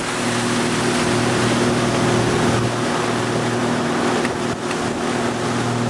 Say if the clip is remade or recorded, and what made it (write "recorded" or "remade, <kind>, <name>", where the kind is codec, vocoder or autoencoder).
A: recorded